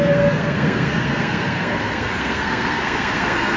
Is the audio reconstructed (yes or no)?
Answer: yes